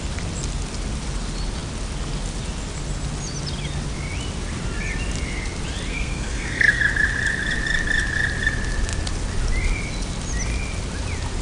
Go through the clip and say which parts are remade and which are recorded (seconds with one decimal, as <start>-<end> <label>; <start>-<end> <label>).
0.0-5.9 recorded; 5.9-6.8 remade; 6.8-11.4 recorded